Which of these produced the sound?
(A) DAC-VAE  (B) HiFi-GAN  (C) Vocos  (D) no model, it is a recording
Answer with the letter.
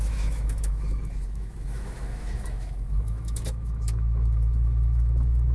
A